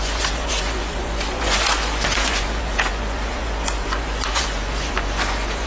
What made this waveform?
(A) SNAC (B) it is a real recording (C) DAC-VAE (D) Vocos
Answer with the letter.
D